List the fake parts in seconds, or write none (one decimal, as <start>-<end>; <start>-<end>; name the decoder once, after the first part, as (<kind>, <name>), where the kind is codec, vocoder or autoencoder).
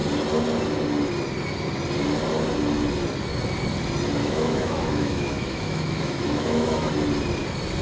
4.2-6.9 (autoencoder, DAC-VAE)